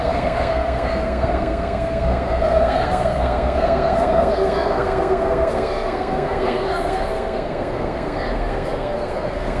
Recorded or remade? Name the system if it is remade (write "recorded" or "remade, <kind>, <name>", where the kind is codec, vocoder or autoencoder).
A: remade, codec, SNAC